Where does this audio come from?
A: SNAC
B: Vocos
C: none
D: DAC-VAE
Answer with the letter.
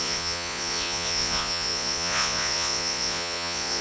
B